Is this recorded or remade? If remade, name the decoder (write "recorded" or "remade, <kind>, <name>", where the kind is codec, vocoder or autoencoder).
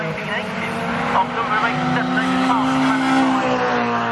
recorded